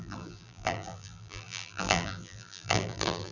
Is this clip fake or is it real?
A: fake